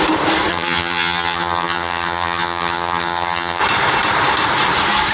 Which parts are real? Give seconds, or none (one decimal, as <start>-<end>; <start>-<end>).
0.0-0.5; 3.6-5.1